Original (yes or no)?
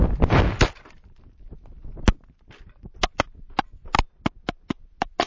yes